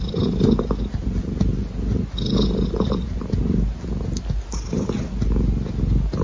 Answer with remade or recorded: recorded